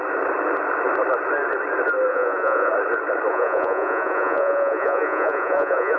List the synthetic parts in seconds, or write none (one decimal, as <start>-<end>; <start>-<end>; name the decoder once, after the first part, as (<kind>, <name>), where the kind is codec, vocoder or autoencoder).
2.1-2.7 (vocoder, Vocos); 3.3-6.0

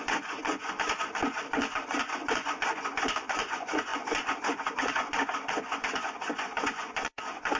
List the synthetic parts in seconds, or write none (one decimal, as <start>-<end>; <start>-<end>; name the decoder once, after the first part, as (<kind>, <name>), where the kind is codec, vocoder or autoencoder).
0.0-7.6 (vocoder, Vocos)

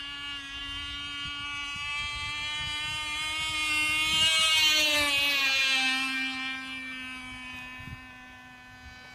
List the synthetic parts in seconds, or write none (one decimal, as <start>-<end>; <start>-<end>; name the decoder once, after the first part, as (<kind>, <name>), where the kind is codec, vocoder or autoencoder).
none

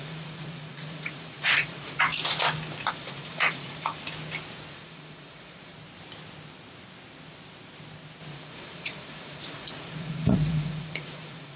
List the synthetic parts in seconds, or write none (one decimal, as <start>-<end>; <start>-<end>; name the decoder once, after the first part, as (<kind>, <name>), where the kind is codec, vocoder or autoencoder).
0.0-2.1 (vocoder, Vocos); 2.9-3.9; 4.7-5.7; 8.3-11.6